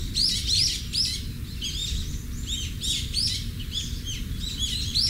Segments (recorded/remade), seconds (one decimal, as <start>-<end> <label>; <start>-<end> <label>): 0.0-5.1 recorded